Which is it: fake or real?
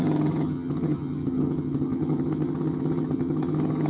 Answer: fake